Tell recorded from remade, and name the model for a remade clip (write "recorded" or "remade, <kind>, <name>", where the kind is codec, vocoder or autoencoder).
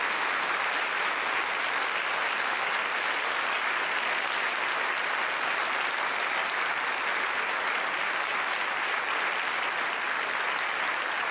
recorded